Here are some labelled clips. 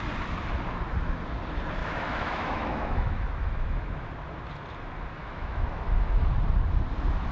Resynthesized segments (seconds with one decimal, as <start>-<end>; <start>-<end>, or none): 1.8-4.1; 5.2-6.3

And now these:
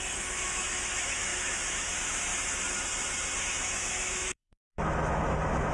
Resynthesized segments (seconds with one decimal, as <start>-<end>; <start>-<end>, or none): 0.0-2.3; 3.4-5.7

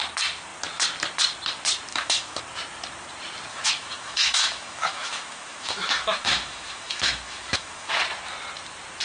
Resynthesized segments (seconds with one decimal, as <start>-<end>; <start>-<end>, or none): 1.9-2.4; 3.5-8.0